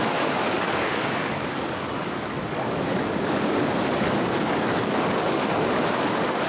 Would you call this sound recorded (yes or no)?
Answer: no